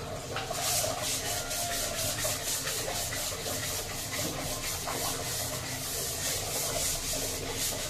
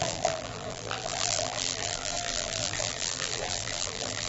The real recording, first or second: first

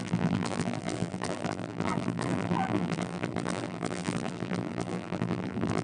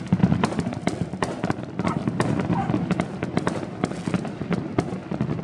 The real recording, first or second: second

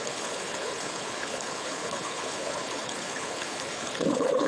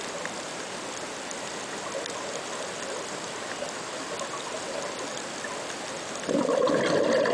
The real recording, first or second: second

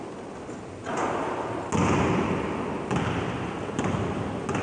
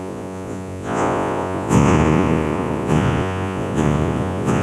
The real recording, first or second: first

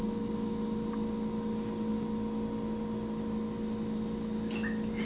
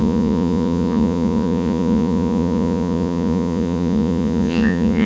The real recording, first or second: first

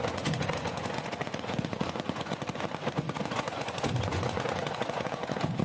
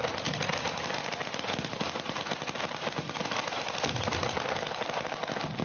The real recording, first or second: second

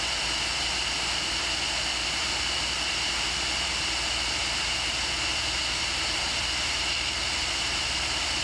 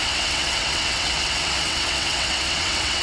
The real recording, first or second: first